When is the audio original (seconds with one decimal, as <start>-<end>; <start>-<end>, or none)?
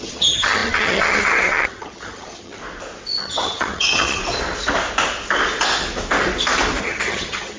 2.6-3.2; 4.2-6.8